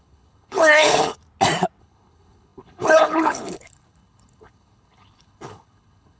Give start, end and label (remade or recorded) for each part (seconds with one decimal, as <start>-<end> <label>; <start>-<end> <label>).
0.0-1.2 remade; 1.2-1.8 recorded; 1.8-6.2 remade